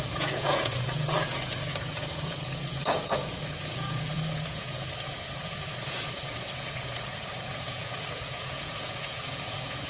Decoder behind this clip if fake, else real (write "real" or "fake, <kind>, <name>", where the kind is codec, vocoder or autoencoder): fake, vocoder, Vocos